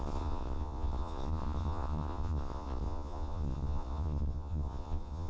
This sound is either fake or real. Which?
fake